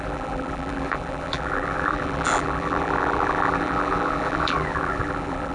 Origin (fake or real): fake